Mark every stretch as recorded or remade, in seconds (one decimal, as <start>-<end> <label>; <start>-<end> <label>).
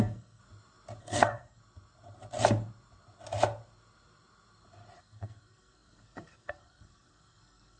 0.0-0.4 remade; 0.4-1.0 recorded; 1.0-1.6 remade; 1.6-5.0 recorded; 5.0-7.8 remade